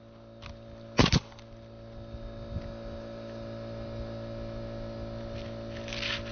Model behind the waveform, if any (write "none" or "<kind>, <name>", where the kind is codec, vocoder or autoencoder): none